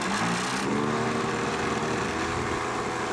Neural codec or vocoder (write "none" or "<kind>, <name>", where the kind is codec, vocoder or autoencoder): none